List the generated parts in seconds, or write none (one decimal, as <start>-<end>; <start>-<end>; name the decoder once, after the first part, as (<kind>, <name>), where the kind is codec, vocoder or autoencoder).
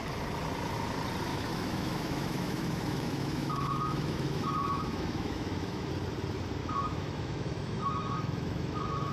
1.3-5.9 (autoencoder, DAC-VAE); 6.6-9.1